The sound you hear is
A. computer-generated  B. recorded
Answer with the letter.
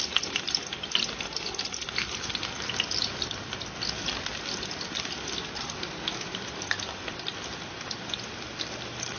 B